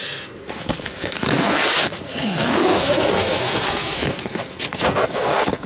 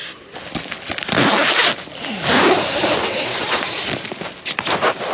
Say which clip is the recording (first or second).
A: second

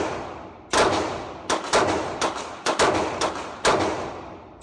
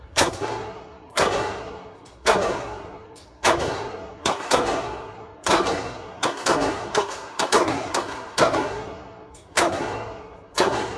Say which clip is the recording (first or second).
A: first